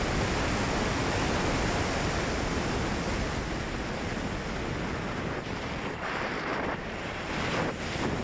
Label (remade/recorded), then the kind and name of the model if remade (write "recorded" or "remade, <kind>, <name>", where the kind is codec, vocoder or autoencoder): recorded